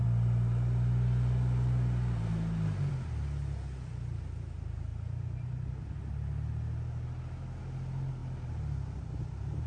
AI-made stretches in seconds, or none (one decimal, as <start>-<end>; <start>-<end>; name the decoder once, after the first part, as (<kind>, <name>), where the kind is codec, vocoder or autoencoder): none